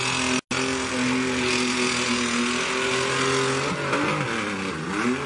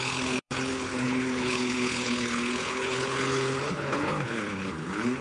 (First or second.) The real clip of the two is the first